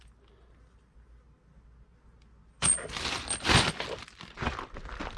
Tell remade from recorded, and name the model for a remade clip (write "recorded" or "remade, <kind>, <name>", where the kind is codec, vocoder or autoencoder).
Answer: recorded